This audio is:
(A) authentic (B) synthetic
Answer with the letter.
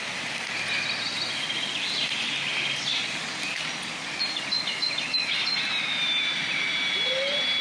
A